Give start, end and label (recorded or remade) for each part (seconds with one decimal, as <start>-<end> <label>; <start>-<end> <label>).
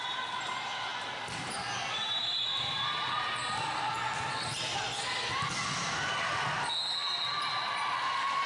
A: 0.0-8.5 recorded